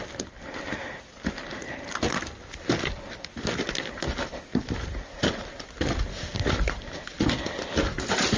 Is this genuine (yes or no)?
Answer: yes